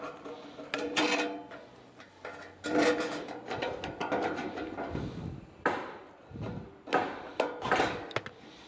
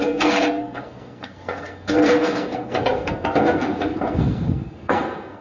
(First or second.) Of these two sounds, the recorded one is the first